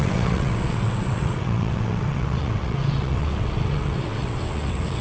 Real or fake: fake